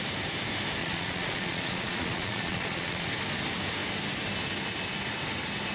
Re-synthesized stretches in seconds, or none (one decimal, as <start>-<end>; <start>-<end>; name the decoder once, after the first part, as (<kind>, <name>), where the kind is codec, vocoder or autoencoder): 0.8-3.1 (vocoder, Vocos)